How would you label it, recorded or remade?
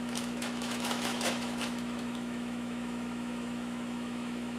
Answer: remade